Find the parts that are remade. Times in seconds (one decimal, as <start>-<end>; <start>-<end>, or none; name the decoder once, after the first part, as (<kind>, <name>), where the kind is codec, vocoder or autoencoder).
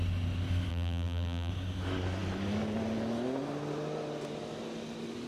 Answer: 0.7-1.5 (vocoder, BigVGAN v2)